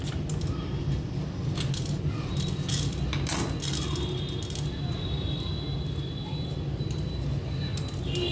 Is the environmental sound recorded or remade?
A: recorded